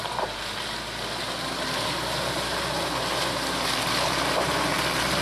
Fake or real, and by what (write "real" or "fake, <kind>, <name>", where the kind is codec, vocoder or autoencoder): real